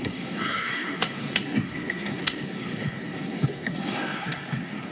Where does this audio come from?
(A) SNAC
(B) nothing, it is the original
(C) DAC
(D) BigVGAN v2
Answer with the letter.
A